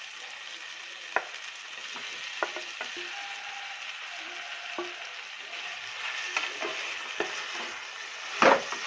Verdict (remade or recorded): recorded